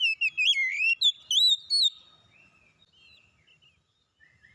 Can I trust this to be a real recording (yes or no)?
yes